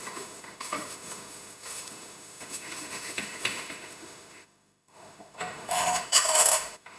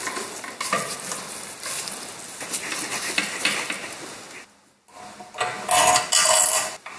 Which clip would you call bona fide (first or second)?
second